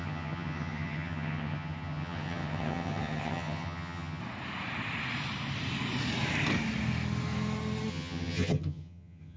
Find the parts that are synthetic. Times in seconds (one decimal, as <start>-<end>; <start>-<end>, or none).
0.0-4.2; 7.9-9.4

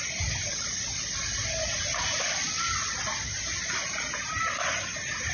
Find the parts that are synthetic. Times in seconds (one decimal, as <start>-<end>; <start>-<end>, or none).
none

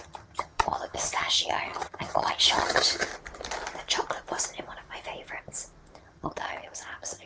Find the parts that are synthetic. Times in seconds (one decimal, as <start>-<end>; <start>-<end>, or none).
0.0-3.1; 6.0-7.3

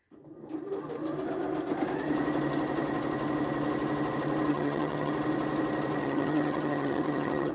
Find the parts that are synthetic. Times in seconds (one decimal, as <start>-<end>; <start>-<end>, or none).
4.5-5.1; 6.0-7.5

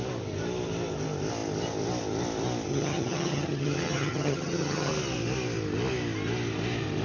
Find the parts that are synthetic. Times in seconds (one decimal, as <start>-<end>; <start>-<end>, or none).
2.7-4.9

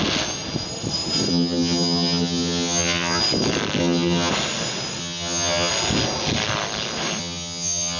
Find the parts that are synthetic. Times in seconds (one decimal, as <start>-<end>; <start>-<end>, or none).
1.3-3.2; 3.8-4.3; 5.0-5.7; 7.2-8.0

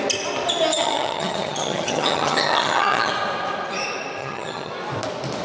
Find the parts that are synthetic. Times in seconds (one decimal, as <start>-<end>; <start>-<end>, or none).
0.7-3.1; 4.2-4.7